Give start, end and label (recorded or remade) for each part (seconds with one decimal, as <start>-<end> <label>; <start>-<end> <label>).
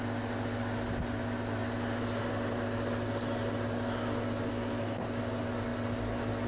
0.0-4.5 recorded; 4.5-5.0 remade; 5.0-6.5 recorded